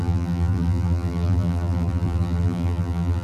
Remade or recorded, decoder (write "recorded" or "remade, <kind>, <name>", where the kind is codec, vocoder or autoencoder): remade, vocoder, BigVGAN v2